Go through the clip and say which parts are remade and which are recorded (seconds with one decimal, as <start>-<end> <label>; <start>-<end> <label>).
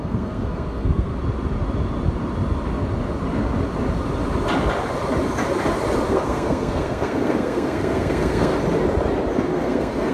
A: 0.0-1.1 remade; 1.1-6.1 recorded; 6.1-8.5 remade; 8.5-9.4 recorded; 9.4-10.1 remade